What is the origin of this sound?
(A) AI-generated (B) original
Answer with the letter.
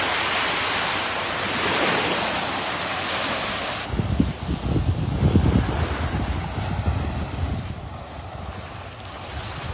B